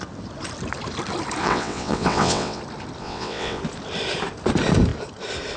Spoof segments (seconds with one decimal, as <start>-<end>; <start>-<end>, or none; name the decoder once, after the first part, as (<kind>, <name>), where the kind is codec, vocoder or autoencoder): 1.4-2.6 (vocoder, WaveNeXt); 3.0-3.6